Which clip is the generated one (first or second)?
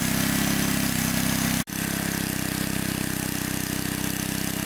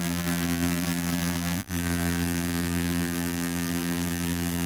second